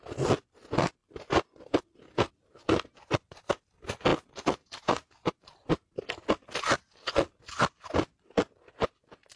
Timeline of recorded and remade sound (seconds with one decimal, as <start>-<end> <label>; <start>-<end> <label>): 0.0-9.4 recorded